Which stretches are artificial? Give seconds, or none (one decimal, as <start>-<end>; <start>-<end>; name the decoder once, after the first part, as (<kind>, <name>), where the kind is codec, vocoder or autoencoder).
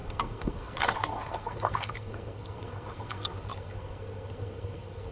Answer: 0.0-5.1 (codec, SNAC)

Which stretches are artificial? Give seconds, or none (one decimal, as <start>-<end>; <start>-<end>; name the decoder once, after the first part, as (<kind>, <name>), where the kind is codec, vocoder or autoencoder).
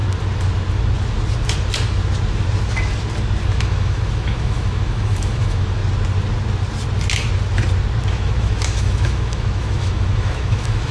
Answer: 3.6-5.8 (autoencoder, DAC-VAE); 8.1-10.9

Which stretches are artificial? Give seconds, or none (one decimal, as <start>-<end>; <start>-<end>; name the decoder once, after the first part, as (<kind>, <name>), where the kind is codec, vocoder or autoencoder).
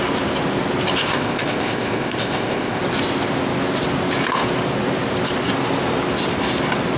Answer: 1.0-2.8 (codec, ZipCodec)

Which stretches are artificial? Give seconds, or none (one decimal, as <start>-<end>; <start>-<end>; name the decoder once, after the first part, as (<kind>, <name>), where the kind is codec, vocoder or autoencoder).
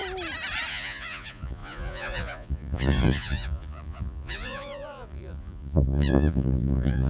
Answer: 0.7-7.1 (vocoder, Vocos)